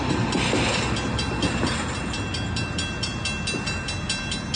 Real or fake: real